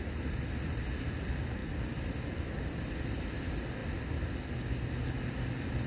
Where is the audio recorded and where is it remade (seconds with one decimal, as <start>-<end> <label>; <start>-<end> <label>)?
0.0-5.9 recorded